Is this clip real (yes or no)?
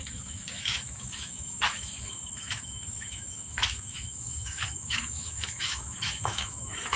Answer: no